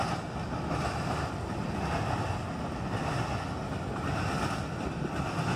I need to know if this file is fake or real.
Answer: real